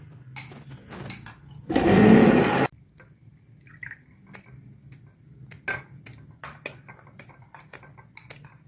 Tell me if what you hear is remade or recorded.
recorded